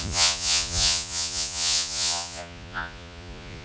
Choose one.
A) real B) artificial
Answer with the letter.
B